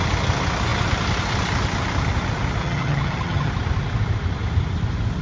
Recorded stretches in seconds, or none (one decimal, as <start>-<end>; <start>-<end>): 0.0-2.6; 3.5-5.2